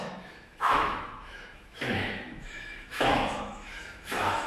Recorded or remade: remade